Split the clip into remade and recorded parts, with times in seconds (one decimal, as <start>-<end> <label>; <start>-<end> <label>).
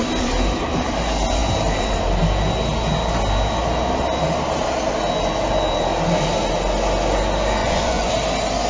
0.0-7.6 recorded; 7.6-8.1 remade; 8.1-8.7 recorded